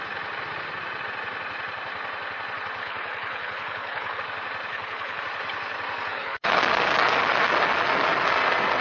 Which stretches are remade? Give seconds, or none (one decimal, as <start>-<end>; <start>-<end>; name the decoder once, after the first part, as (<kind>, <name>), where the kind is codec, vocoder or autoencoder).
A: 2.8-4.2 (codec, HILCodec); 4.7-5.2; 6.1-6.6